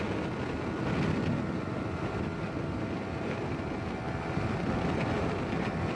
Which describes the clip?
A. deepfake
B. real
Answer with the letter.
B